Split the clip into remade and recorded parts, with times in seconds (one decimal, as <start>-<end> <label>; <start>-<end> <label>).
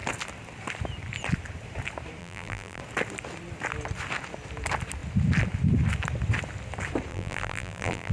0.0-2.2 recorded; 2.2-2.8 remade; 2.8-7.1 recorded; 7.1-8.1 remade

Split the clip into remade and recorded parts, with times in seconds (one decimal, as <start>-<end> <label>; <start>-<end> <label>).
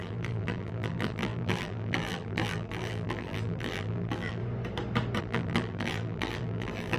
0.0-4.4 remade; 4.4-5.2 recorded; 5.2-7.0 remade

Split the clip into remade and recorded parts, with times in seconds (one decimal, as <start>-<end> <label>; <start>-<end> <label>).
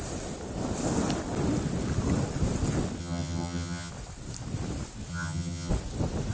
0.0-3.0 recorded; 3.0-3.9 remade; 3.9-5.1 recorded; 5.1-5.7 remade; 5.7-6.3 recorded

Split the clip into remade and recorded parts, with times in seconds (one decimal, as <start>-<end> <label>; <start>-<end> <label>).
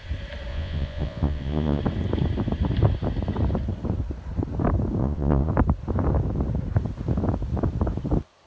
0.0-0.5 recorded; 0.5-1.8 remade; 1.8-5.0 recorded; 5.0-5.5 remade; 5.5-8.5 recorded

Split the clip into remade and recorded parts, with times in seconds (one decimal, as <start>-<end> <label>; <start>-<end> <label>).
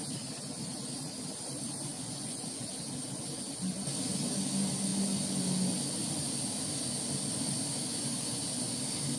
0.0-1.9 recorded; 1.9-2.7 remade; 2.7-7.9 recorded; 7.9-8.7 remade; 8.7-9.2 recorded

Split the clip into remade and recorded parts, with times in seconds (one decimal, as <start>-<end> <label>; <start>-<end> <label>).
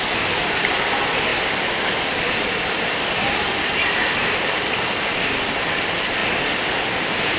0.0-1.3 recorded; 1.3-5.7 remade; 5.7-6.2 recorded; 6.2-7.4 remade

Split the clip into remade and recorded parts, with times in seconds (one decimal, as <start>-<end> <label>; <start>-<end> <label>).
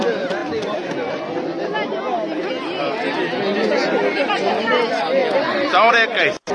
0.0-6.5 recorded